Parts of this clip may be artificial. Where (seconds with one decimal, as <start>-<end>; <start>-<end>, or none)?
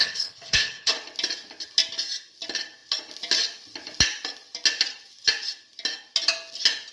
0.0-0.9